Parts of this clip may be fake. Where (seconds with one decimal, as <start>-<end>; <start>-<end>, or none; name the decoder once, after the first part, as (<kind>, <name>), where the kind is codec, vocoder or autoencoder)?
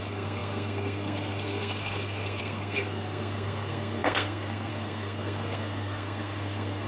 0.0-6.9 (codec, SNAC)